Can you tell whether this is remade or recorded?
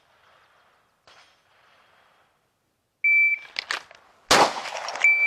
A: recorded